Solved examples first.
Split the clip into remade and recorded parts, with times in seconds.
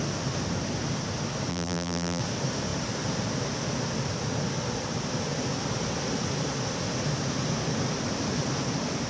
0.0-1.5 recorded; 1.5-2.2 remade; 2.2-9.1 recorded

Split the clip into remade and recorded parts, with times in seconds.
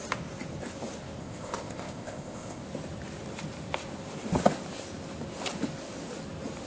0.0-1.2 recorded; 1.2-2.6 remade; 2.6-6.7 recorded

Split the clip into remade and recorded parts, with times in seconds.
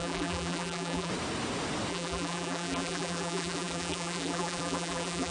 0.0-1.1 remade; 1.1-1.9 recorded; 1.9-5.3 remade